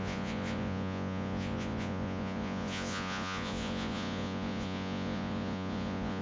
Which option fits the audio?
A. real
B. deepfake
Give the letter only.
B